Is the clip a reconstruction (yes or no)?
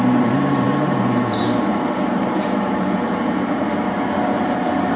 yes